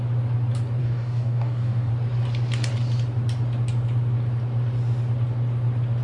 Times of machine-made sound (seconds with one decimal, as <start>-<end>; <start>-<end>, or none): 0.8-1.9